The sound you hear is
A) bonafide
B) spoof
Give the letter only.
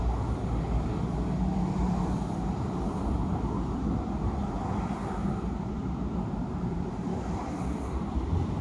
B